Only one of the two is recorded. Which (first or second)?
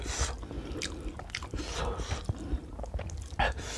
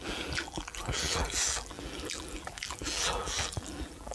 first